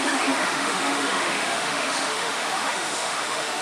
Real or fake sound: fake